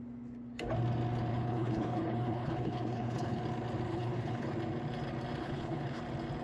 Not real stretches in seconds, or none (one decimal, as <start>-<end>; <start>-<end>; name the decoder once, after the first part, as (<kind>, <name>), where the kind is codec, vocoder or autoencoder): 1.3-3.4 (codec, HILCodec); 3.9-4.5; 5.4-6.0